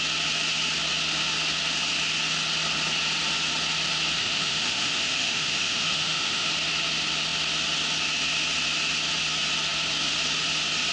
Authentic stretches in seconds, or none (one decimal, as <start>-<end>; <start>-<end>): 0.0-4.2; 6.5-10.9